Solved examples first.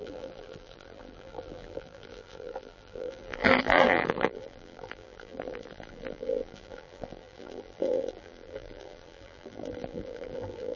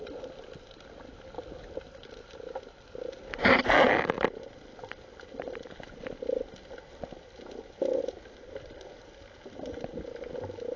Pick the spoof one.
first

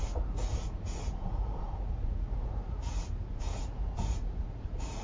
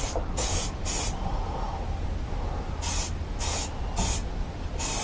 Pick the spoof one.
first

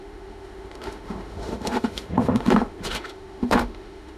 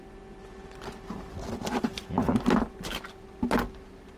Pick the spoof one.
first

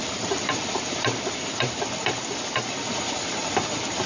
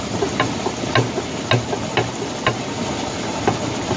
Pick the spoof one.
first